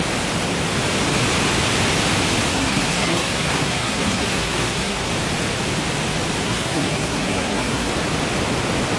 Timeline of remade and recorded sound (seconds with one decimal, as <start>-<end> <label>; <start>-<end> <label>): 0.0-2.5 recorded; 2.5-5.1 remade; 5.1-6.4 recorded; 6.4-7.9 remade; 7.9-9.0 recorded